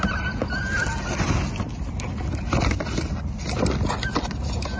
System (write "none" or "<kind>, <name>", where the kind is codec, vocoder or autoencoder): none